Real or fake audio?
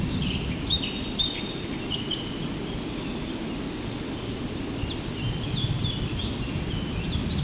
real